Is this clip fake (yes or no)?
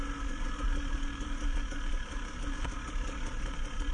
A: no